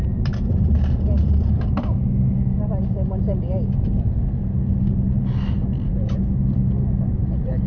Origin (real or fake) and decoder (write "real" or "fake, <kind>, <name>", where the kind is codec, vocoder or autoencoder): real